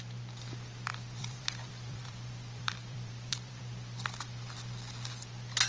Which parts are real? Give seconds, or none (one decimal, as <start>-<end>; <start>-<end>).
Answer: 0.0-0.9; 3.6-5.7